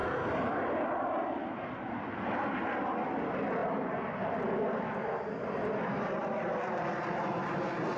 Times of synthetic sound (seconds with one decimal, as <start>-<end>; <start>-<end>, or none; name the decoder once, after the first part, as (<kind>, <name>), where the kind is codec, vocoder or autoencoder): none